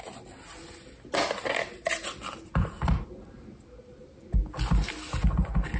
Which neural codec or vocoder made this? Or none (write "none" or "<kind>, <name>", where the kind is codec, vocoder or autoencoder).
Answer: none